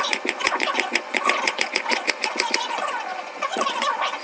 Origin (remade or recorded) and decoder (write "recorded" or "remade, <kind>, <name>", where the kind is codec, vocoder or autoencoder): remade, vocoder, Vocos